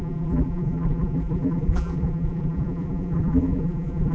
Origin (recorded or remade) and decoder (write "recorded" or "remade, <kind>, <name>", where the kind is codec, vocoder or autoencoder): remade, vocoder, BigVGAN v2